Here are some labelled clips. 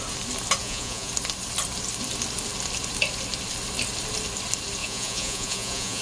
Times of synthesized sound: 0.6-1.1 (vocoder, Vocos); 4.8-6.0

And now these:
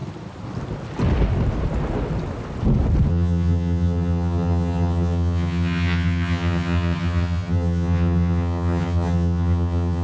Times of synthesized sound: 3.1-10.0 (vocoder, HiFi-GAN)

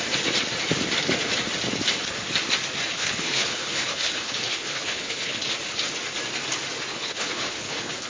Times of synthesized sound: 2.9-5.5 (codec, HILCodec); 6.9-8.1

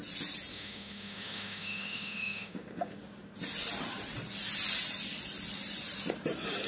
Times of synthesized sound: 0.5-3.0 (autoencoder, DAC-VAE)